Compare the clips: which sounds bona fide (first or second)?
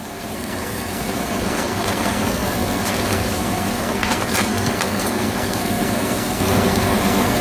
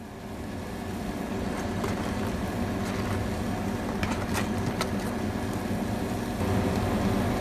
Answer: second